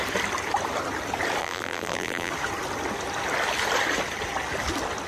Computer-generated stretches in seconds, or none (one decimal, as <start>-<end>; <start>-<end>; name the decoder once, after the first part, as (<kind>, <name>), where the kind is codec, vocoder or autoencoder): 1.4-2.3 (vocoder, BigVGAN v2)